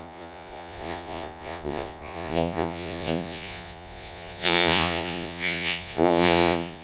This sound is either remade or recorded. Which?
remade